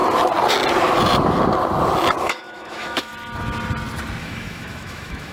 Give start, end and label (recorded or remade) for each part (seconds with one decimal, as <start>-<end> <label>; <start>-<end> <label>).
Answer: 0.0-2.2 recorded; 2.2-3.1 remade; 3.1-4.2 recorded; 4.2-5.3 remade

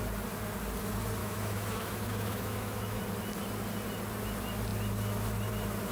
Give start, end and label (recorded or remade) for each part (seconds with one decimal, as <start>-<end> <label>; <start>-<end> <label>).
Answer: 0.0-1.2 recorded; 1.2-3.0 remade; 3.0-5.9 recorded

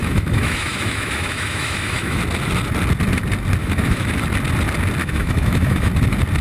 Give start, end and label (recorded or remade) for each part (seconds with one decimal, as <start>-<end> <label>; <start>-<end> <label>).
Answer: 0.0-2.2 remade; 2.2-3.6 recorded; 3.6-4.1 remade; 4.1-5.0 recorded; 5.0-5.9 remade; 5.9-6.4 recorded